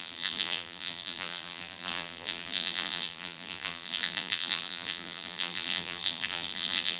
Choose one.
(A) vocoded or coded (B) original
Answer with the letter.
A